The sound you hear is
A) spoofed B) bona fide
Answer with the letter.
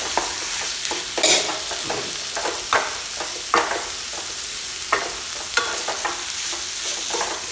B